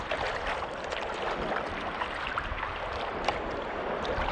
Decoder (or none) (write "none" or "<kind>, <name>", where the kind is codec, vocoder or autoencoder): vocoder, BigVGAN v2